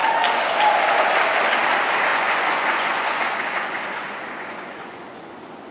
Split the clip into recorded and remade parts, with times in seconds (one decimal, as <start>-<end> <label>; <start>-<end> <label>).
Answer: 0.0-2.1 recorded; 2.1-5.7 remade